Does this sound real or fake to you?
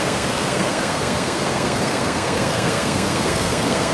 fake